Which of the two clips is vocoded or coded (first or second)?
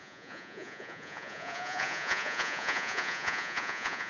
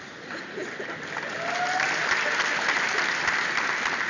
first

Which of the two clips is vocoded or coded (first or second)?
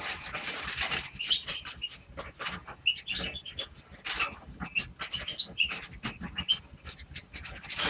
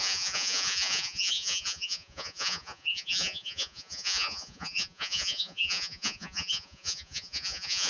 second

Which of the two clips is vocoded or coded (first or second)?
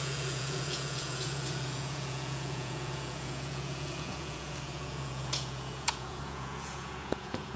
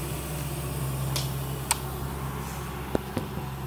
first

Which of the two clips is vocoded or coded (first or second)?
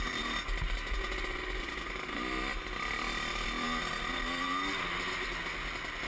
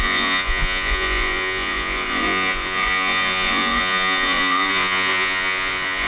second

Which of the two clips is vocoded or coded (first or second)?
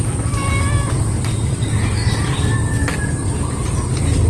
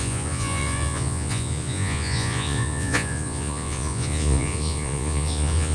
second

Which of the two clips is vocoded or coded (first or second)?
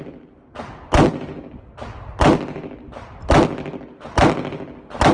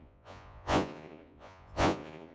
second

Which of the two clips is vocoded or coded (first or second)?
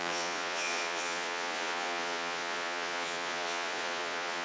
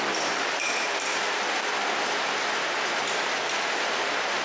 first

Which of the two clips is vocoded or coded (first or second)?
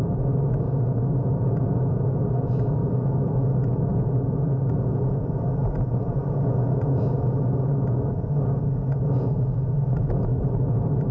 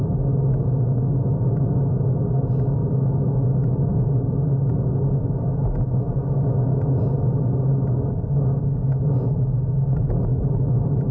first